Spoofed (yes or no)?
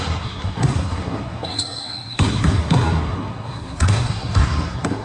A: yes